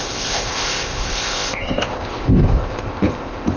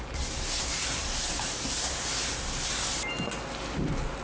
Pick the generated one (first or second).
first